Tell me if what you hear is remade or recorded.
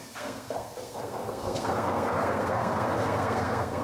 remade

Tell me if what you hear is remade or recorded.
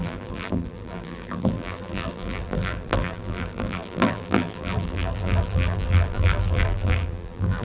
remade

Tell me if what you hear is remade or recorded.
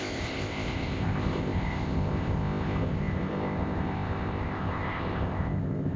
remade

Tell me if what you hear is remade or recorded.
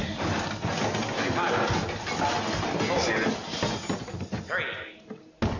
recorded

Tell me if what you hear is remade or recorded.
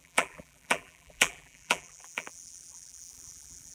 remade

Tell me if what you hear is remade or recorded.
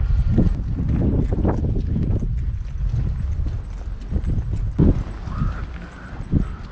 recorded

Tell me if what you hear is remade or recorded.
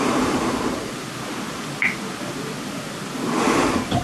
recorded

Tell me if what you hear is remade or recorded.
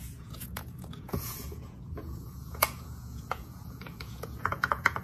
remade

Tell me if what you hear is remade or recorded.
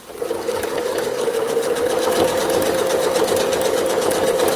remade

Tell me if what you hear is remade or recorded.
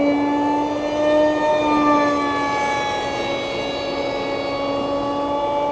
recorded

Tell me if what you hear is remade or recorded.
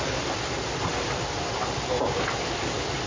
remade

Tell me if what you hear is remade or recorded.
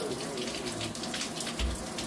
recorded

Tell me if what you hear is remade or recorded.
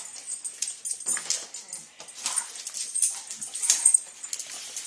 recorded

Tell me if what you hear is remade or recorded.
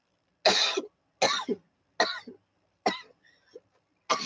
recorded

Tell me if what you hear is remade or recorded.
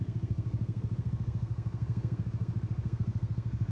remade